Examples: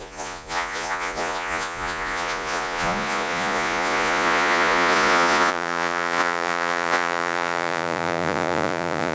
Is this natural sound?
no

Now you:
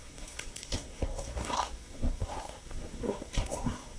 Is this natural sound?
no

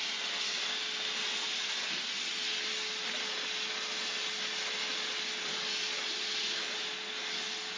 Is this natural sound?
yes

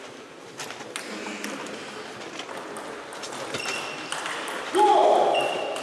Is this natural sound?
yes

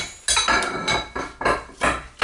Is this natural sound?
yes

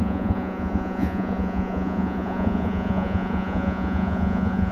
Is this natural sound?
no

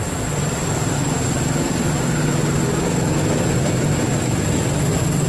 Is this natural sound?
yes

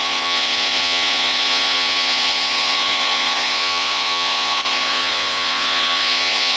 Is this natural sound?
no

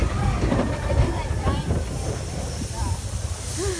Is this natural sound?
yes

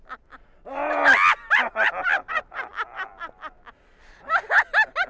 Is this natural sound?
yes